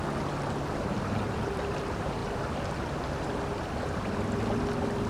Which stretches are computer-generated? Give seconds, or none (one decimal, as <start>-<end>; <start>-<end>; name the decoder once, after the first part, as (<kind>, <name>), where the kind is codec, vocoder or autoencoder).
1.2-2.2 (vocoder, BigVGAN v2)